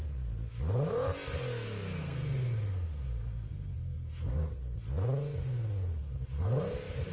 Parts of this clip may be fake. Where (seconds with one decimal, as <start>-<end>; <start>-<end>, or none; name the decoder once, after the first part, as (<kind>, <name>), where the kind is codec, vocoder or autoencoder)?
2.0-4.6 (codec, SNAC); 6.0-6.6